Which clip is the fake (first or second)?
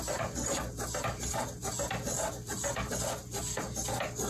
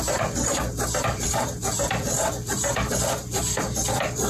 second